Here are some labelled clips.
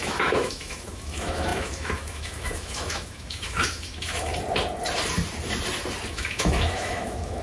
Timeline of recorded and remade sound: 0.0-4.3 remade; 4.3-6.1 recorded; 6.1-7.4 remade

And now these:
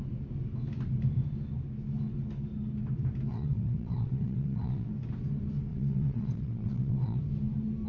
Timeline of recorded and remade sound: 0.0-3.3 recorded; 3.3-4.9 remade; 4.9-5.7 recorded; 5.7-7.2 remade; 7.2-7.9 recorded

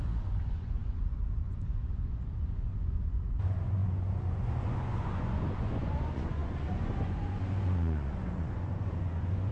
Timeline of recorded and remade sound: 0.0-9.5 remade